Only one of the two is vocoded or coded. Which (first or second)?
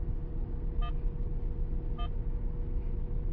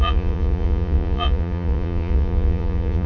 second